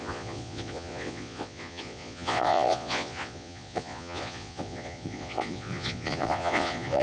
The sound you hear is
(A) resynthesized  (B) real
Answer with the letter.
A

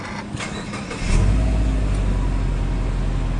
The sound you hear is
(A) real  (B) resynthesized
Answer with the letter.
A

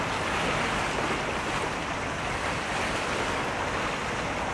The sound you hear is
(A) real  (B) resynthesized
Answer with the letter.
A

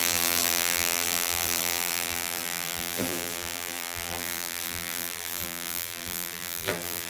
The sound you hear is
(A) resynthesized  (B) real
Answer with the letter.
A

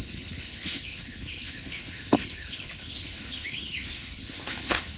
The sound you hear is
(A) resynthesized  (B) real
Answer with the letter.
A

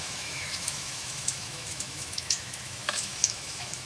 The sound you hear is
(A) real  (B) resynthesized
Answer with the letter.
B